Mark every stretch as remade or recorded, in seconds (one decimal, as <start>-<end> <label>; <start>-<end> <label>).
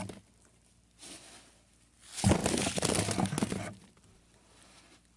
0.0-5.2 recorded